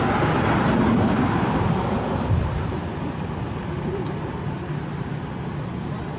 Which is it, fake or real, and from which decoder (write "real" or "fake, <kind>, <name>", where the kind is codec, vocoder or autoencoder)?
real